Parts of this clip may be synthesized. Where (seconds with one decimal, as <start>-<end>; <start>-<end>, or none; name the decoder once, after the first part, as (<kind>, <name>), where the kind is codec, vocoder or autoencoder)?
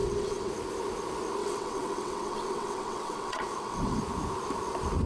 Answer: 0.0-0.5 (vocoder, WaveNeXt); 1.4-4.0